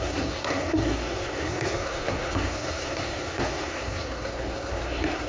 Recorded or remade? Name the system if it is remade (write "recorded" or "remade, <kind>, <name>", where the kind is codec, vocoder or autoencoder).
remade, codec, SNAC